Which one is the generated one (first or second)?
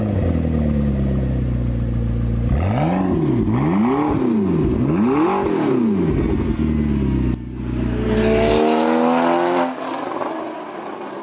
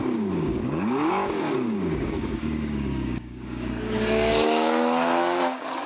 second